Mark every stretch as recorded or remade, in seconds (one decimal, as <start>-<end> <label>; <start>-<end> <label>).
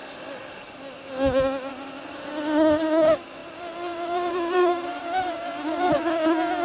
0.0-3.4 recorded; 3.4-6.1 remade; 6.1-6.6 recorded